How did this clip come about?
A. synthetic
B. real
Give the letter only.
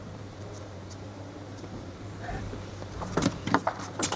A